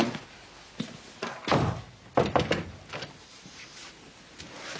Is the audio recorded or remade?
recorded